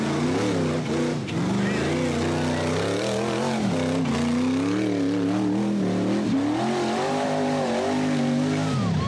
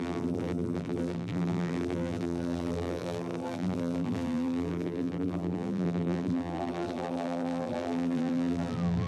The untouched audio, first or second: first